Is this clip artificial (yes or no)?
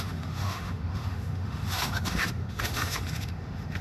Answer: yes